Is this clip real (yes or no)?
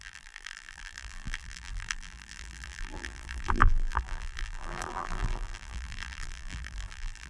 no